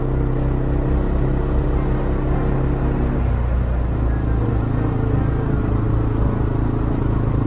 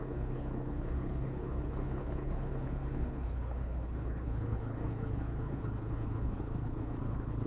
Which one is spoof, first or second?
second